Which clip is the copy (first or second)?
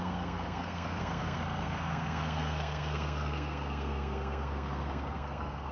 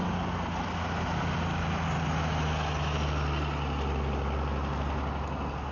first